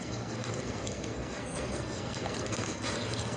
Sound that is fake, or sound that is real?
fake